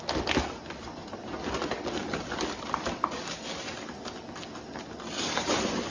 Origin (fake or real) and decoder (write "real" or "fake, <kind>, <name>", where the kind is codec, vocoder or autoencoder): real